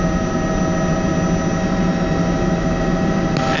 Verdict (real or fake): real